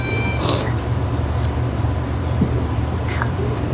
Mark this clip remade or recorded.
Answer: remade